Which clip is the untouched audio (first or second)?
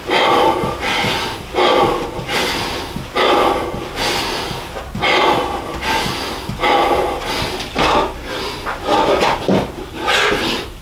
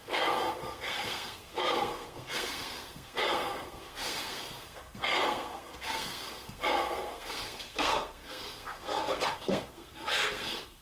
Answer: first